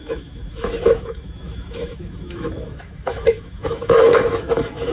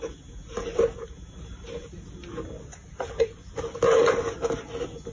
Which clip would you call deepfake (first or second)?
first